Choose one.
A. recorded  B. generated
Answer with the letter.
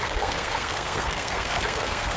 B